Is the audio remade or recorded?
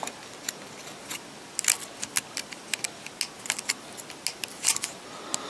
recorded